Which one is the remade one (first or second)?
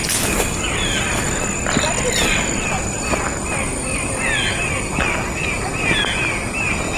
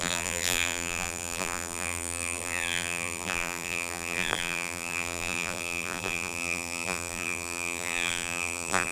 second